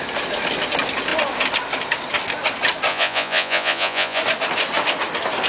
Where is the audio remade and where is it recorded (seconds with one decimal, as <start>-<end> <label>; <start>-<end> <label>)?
0.0-2.9 recorded; 2.9-4.2 remade; 4.2-5.5 recorded